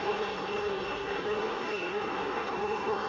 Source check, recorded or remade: remade